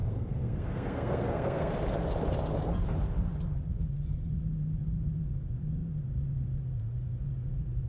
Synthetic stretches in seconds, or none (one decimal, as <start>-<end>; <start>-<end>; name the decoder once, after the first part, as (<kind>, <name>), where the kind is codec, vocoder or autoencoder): 0.0-1.7 (codec, SNAC)